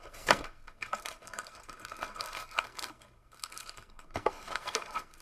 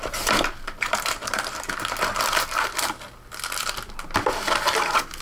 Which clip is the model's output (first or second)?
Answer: first